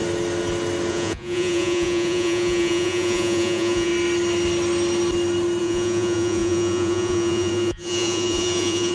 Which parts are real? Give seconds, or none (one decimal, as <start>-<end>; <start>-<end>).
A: 0.0-0.9; 3.9-5.6